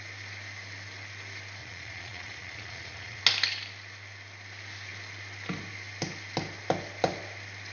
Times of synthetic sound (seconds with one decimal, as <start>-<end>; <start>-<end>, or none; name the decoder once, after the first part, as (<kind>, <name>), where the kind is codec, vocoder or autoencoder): 1.6-3.2 (vocoder, Vocos)